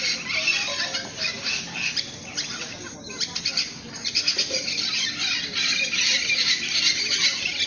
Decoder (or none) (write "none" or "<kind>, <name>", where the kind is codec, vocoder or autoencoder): none